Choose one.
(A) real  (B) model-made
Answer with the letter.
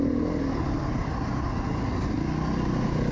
A